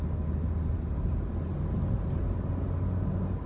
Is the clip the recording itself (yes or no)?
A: yes